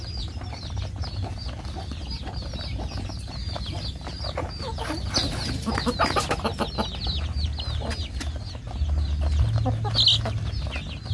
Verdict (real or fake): real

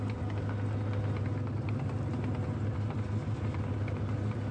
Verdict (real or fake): real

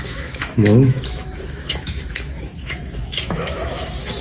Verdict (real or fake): fake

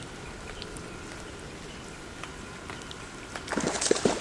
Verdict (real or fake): real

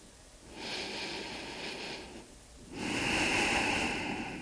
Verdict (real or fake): real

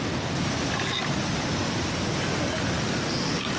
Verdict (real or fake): real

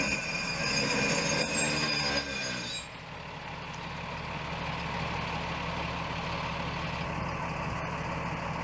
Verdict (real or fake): real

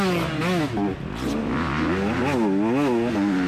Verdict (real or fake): real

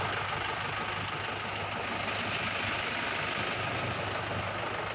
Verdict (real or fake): real